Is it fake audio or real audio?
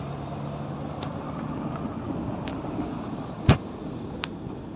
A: real